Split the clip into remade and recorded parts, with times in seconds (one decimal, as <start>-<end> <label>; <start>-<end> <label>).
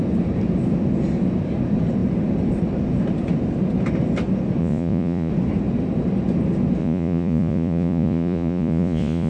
0.0-4.6 recorded; 4.6-5.3 remade; 5.3-6.8 recorded; 6.8-9.3 remade